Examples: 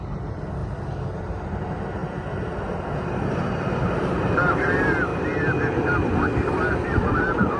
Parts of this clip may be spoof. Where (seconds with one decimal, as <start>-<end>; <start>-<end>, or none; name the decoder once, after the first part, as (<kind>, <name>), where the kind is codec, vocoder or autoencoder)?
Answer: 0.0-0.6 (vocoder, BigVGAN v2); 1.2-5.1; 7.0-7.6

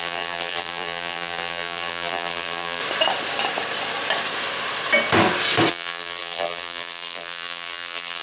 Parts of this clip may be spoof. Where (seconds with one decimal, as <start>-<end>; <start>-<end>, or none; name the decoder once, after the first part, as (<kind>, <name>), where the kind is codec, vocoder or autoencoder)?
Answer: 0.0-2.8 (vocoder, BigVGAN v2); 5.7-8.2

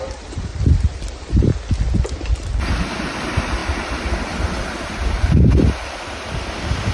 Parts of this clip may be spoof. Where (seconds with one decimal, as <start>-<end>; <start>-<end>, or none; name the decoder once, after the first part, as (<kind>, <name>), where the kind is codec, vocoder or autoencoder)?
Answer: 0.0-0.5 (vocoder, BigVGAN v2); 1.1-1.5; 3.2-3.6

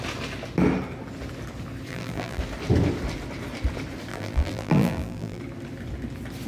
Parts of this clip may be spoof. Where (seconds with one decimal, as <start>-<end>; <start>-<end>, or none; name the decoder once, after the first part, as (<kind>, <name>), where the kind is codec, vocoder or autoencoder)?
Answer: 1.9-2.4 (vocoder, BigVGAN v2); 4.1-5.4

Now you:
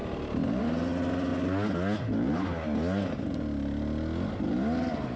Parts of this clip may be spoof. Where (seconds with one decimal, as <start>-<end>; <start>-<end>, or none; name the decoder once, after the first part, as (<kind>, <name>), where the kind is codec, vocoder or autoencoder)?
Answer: 0.6-1.3 (vocoder, BigVGAN v2); 4.4-5.2

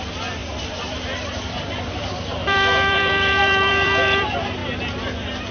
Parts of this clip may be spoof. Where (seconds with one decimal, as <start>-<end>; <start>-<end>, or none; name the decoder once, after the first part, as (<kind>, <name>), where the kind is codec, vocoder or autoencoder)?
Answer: 0.0-4.6 (vocoder, BigVGAN v2)